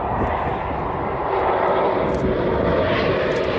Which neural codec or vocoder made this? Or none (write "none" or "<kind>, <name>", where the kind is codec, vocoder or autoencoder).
none